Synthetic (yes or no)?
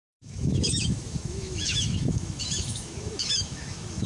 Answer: yes